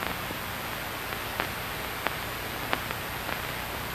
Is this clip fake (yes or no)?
no